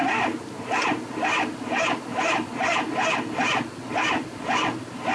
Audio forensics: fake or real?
real